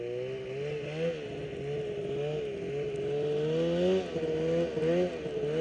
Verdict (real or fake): real